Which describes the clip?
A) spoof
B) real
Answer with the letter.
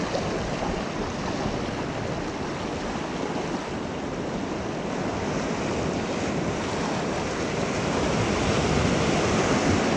B